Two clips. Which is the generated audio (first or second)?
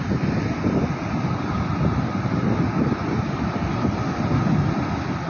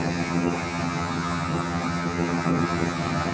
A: second